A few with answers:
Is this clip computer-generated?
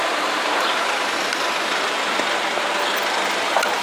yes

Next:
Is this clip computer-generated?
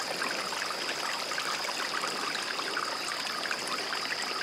no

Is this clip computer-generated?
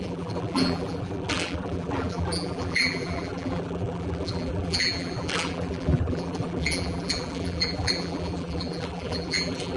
yes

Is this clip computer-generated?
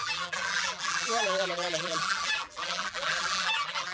yes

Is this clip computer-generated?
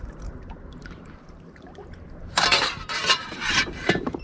yes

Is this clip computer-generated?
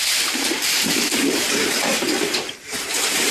yes